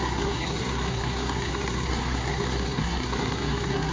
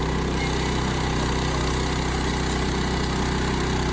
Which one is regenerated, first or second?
first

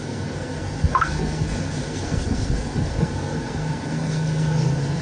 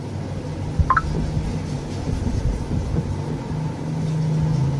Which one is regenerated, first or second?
first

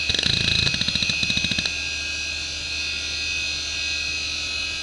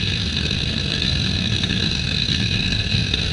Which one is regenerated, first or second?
second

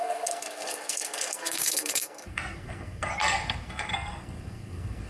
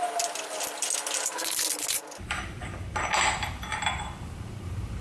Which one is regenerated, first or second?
first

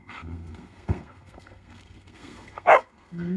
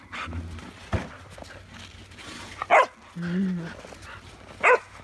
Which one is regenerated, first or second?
first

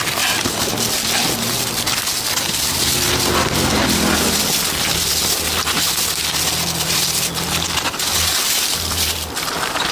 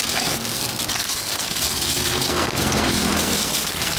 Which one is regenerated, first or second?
second